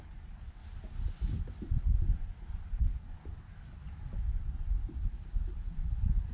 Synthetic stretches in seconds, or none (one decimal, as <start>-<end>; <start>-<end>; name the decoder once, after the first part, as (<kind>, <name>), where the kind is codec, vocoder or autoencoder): 0.0-0.6 (codec, DAC); 2.8-3.8